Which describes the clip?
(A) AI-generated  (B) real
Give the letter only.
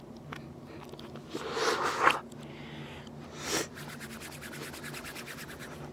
B